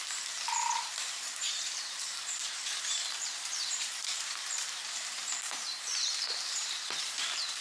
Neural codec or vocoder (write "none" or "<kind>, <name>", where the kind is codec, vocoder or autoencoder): vocoder, BigVGAN v2